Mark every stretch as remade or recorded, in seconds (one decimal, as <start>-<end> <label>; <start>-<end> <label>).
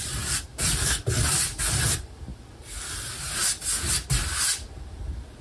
0.0-0.5 recorded; 0.5-1.6 remade; 1.6-5.4 recorded